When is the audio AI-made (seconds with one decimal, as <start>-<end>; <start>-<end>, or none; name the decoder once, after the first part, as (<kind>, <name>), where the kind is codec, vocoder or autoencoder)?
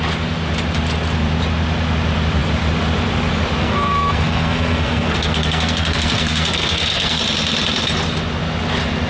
3.6-7.2 (codec, SNAC)